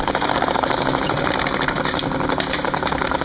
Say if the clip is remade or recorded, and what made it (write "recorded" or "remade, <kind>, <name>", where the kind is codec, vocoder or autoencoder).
recorded